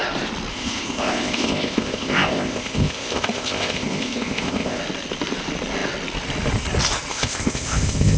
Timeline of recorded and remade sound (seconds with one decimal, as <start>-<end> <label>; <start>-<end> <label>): 0.0-0.5 recorded; 0.5-4.8 remade; 4.8-7.1 recorded; 7.1-8.2 remade